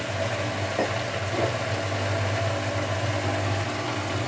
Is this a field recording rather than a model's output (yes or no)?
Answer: yes